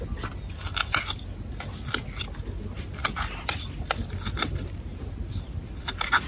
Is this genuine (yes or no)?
yes